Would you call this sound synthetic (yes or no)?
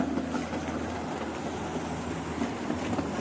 no